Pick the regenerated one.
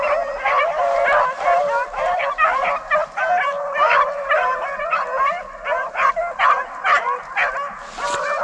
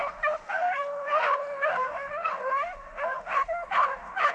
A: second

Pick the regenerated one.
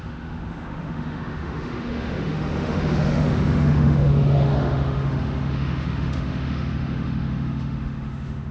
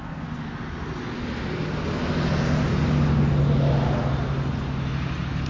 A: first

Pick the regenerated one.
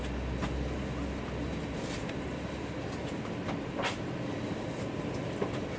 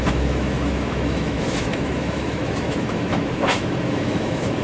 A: second